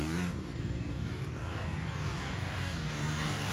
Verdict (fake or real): fake